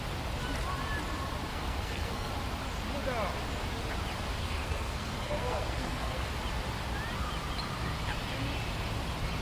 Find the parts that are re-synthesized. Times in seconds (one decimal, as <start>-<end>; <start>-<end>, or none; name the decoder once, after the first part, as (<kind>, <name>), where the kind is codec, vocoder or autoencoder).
1.5-2.3 (codec, SNAC); 4.4-6.3